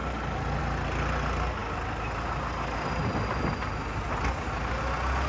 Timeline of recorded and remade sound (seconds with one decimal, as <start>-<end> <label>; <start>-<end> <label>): 0.0-5.3 recorded